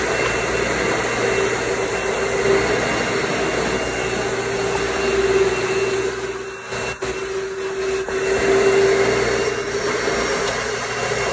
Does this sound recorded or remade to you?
recorded